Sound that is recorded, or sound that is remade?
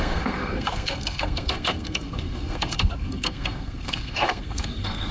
remade